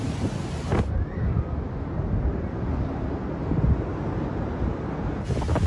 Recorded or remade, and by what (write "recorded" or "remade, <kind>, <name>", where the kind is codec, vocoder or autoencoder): recorded